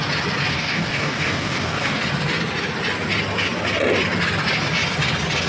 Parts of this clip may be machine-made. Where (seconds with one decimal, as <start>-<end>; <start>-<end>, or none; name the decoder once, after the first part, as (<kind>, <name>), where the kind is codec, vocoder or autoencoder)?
0.5-2.0 (codec, DAC)

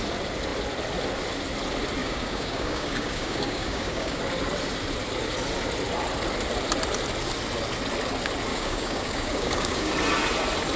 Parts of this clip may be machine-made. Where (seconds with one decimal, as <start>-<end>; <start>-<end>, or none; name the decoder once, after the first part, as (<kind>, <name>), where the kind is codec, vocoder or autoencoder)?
2.0-4.2 (codec, DAC); 8.5-9.9

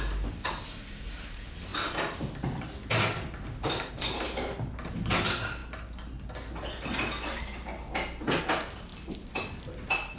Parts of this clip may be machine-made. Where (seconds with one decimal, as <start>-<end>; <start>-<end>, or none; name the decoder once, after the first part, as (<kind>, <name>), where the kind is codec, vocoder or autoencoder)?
none

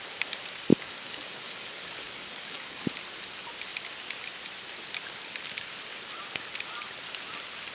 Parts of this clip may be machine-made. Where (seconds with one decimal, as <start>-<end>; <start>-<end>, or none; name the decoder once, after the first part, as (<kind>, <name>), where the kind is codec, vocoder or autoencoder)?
0.7-3.0 (codec, DAC)

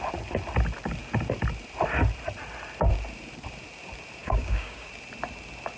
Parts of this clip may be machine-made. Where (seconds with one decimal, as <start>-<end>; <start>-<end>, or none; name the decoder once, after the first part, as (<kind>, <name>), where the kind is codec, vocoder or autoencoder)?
4.2-4.9 (codec, DAC)

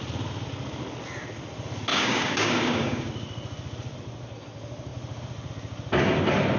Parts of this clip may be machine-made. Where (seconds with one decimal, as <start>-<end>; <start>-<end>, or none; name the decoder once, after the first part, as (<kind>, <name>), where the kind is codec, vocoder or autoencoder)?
1.9-3.1 (codec, DAC)

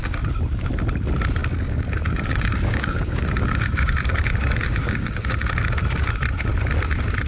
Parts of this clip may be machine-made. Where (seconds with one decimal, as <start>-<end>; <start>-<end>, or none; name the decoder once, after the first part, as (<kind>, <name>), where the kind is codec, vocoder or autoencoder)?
1.4-5.8 (codec, DAC)